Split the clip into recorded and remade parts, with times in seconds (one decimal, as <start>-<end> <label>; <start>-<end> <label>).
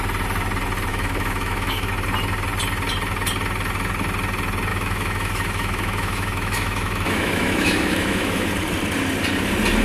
0.0-0.9 recorded; 0.9-1.9 remade; 1.9-4.7 recorded; 4.7-8.5 remade; 8.5-9.8 recorded